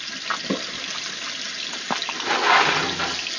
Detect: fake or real real